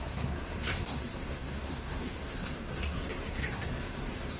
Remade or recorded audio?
remade